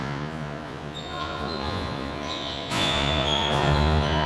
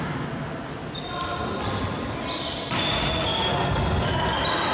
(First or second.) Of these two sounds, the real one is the second